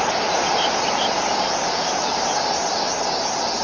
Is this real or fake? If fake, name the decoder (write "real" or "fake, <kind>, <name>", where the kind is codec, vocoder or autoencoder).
real